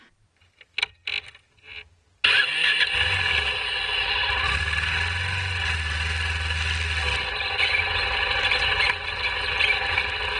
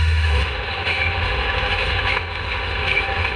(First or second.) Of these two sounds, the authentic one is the first